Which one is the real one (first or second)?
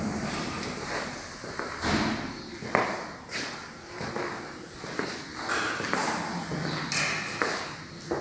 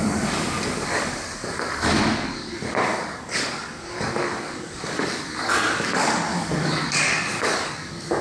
first